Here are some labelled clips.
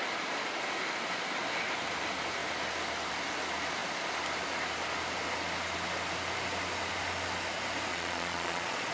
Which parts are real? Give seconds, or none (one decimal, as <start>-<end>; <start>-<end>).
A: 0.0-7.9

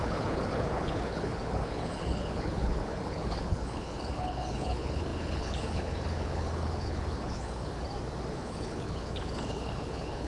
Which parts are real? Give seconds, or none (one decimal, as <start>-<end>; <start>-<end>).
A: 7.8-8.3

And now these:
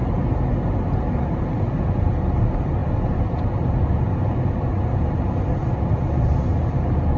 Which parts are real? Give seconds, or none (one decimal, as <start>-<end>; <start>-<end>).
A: 0.0-7.2

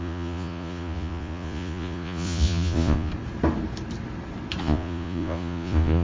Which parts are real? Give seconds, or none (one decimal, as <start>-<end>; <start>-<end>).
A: 3.1-4.6